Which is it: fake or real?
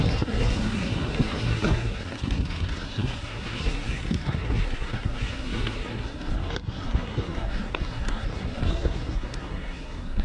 fake